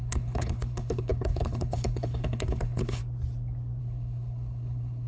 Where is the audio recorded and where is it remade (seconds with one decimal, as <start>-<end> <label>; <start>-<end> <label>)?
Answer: 0.0-3.0 remade; 3.0-3.8 recorded; 3.8-5.1 remade